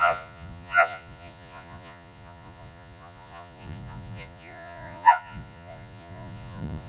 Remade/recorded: remade